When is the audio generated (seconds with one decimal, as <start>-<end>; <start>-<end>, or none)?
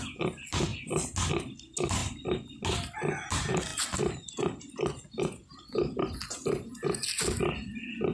none